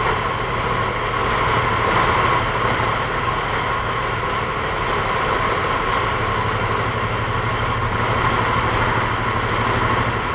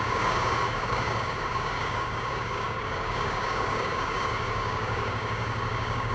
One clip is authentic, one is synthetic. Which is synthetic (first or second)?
second